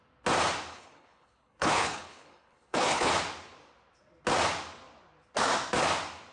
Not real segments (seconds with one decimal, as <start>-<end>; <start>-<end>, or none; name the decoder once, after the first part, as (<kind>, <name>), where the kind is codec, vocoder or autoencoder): 0.7-3.1 (codec, HILCodec)